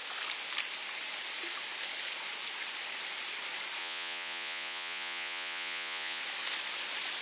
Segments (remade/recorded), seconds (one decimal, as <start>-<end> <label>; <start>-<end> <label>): 0.0-3.8 recorded; 3.8-6.2 remade; 6.2-7.2 recorded